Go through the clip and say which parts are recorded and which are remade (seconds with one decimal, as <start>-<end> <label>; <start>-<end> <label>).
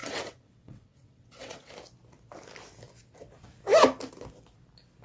0.0-1.7 remade; 1.7-5.0 recorded